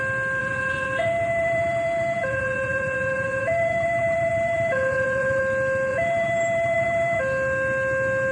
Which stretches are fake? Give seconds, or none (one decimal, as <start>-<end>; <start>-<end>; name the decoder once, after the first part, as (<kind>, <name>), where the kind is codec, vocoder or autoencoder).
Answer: 0.4-5.4 (vocoder, Vocos); 5.9-7.2